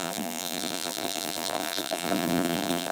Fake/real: fake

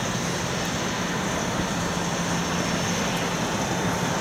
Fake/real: real